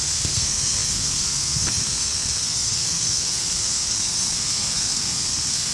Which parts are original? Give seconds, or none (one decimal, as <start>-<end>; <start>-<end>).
none